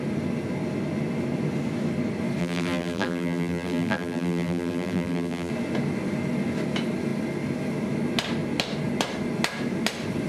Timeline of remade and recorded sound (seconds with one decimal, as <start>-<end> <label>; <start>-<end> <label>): 0.0-2.4 recorded; 2.4-5.5 remade; 5.5-10.3 recorded